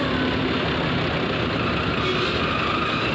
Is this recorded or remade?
recorded